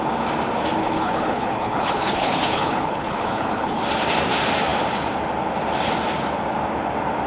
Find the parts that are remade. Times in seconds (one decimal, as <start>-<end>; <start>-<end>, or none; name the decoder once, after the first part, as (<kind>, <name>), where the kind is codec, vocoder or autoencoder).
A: 0.8-3.8 (codec, HILCodec)